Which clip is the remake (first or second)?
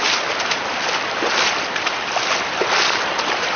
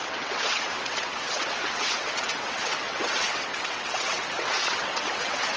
second